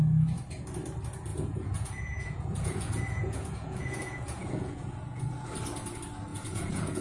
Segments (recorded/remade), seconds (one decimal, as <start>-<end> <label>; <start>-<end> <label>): 0.0-1.3 recorded; 1.3-5.5 remade; 5.5-6.3 recorded; 6.3-7.0 remade